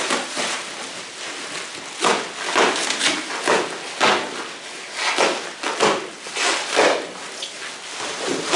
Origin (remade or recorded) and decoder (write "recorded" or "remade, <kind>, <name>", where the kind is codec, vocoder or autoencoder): recorded